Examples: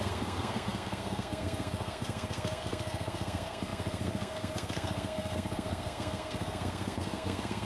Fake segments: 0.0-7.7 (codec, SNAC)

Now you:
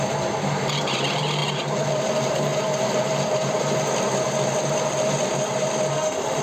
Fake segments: 5.9-6.4 (autoencoder, DAC-VAE)

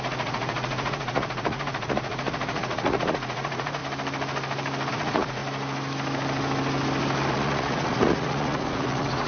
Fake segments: 0.0-3.8 (vocoder, Vocos); 4.9-5.4; 7.3-9.3

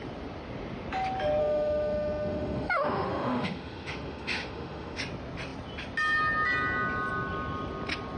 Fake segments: 1.4-5.0 (autoencoder, DAC-VAE)